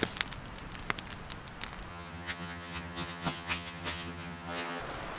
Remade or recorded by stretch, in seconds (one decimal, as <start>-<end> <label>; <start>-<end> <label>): 0.0-1.9 recorded; 1.9-4.8 remade; 4.8-5.2 recorded